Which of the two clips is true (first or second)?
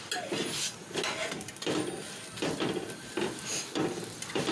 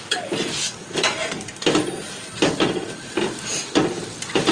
first